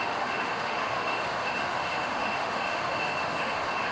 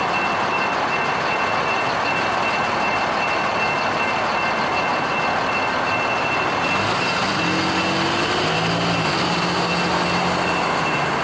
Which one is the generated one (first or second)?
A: first